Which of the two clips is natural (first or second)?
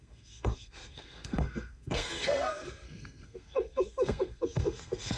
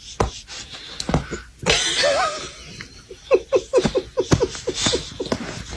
second